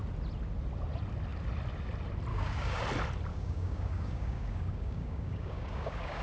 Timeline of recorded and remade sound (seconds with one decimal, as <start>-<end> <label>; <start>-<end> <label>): 0.0-2.3 recorded; 2.3-2.8 remade; 2.8-3.3 recorded; 3.3-6.2 remade